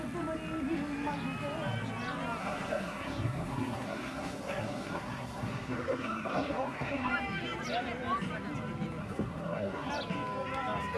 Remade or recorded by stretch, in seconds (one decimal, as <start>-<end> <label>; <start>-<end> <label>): 0.0-2.4 recorded; 2.4-7.1 remade; 7.1-9.0 recorded; 9.0-9.9 remade; 9.9-11.0 recorded